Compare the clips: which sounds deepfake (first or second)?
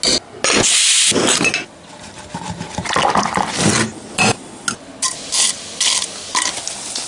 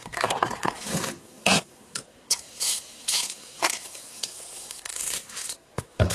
second